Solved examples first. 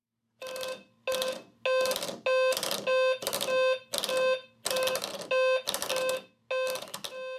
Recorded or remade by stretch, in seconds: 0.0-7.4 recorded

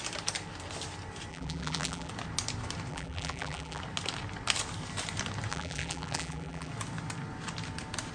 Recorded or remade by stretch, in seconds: 0.0-1.3 recorded; 1.3-2.1 remade; 2.1-2.9 recorded; 2.9-3.8 remade; 3.8-5.5 recorded; 5.5-6.7 remade; 6.7-8.1 recorded

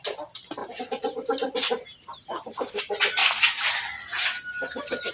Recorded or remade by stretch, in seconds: 0.0-0.6 recorded; 0.6-2.8 remade; 2.8-5.1 recorded

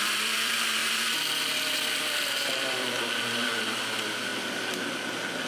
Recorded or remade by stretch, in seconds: 0.0-4.3 remade; 4.3-5.5 recorded